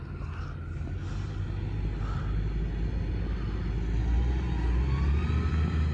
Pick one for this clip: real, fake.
real